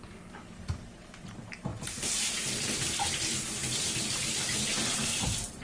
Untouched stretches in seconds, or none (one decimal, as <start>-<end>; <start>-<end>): 0.0-1.7; 3.1-3.6; 4.8-5.6